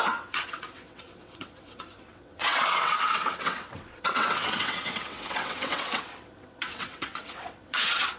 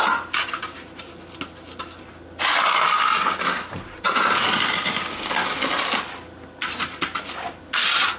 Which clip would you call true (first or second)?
second